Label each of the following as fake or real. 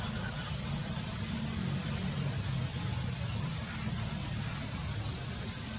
real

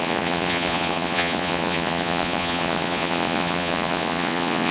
fake